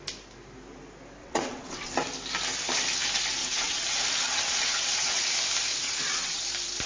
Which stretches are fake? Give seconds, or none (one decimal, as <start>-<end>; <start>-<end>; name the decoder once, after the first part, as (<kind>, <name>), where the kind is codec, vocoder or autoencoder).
1.2-1.9 (vocoder, WaveNeXt); 3.4-5.2; 5.7-6.4